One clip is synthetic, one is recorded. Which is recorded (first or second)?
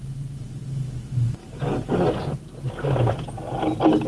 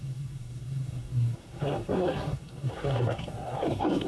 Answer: first